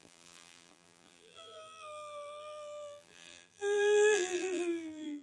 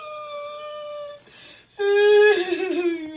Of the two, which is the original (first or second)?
second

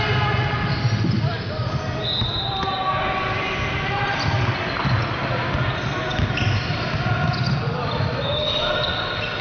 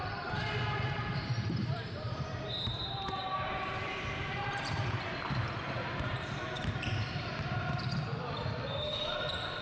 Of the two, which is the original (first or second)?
first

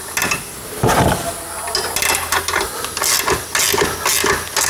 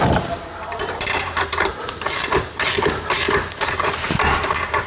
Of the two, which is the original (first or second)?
first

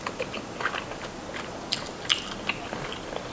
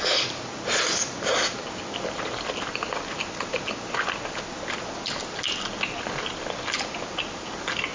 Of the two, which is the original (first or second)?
second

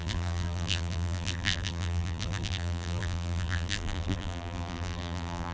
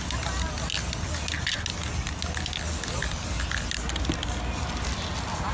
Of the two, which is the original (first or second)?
second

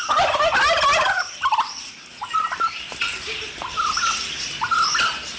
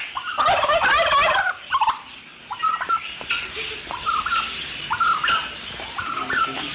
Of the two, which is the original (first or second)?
second